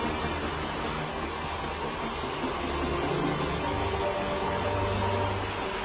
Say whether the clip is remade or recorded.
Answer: recorded